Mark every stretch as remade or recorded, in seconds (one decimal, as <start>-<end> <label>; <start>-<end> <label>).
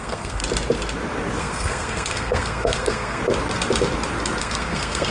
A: 0.0-0.4 remade; 0.4-1.4 recorded; 1.4-3.2 remade; 3.2-4.4 recorded; 4.4-5.1 remade